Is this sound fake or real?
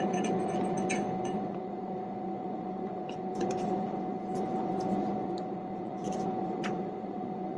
fake